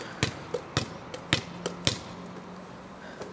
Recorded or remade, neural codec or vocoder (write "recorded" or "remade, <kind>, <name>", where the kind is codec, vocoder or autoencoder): recorded